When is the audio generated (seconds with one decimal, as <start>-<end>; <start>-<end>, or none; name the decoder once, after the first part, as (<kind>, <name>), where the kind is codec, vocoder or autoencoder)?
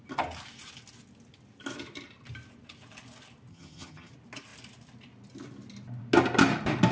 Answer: 3.5-4.1 (vocoder, HiFi-GAN)